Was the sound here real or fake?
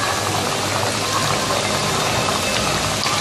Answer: real